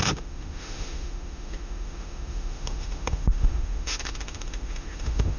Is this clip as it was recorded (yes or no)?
no